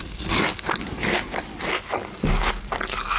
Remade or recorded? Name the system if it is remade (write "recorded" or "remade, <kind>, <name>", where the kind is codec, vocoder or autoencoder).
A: recorded